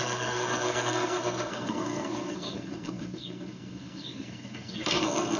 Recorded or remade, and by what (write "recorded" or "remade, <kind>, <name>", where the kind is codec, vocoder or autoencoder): remade, codec, SNAC